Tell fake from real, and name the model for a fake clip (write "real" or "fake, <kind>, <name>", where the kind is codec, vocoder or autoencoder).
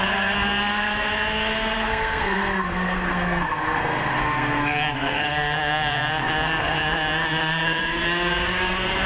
fake, codec, SNAC